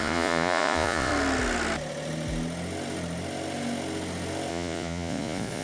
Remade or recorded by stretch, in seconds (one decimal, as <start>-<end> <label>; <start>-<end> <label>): 0.0-1.1 remade; 1.1-4.5 recorded; 4.5-5.6 remade